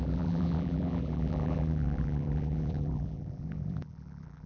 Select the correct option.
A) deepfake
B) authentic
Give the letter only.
A